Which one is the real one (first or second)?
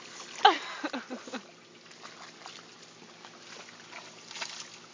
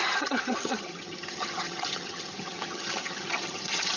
first